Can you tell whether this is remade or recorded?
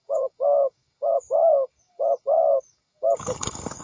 remade